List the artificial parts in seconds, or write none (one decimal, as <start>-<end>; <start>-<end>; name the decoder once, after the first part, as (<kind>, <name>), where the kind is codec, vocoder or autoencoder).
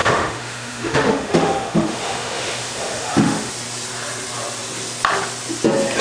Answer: 0.0-3.5 (autoencoder, DAC-VAE)